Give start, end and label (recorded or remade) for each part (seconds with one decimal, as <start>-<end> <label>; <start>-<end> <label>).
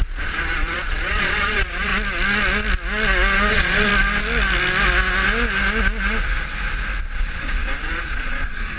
0.0-1.9 remade; 1.9-3.5 recorded; 3.5-3.9 remade; 3.9-7.0 recorded; 7.0-8.8 remade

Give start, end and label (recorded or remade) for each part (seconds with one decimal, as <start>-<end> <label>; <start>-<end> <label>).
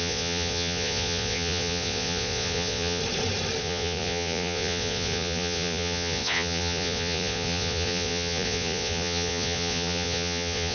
0.0-3.0 remade; 3.0-3.6 recorded; 3.6-10.7 remade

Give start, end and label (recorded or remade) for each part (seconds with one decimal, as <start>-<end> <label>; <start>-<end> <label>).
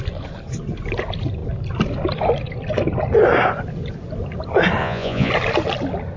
0.0-4.8 recorded; 4.8-5.3 remade; 5.3-6.2 recorded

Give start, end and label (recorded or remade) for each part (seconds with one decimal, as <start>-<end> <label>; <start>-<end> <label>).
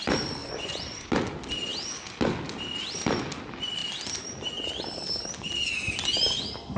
0.0-0.4 recorded; 0.4-1.1 remade; 1.1-6.8 recorded